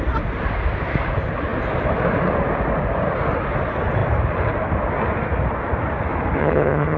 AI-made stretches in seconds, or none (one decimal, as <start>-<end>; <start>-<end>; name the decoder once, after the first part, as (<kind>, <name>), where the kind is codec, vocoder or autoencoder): 6.4-7.0 (vocoder, HiFi-GAN)